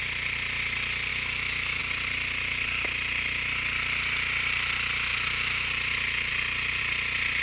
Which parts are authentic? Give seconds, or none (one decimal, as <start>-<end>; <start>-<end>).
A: 0.0-1.1; 1.8-5.1; 5.7-7.4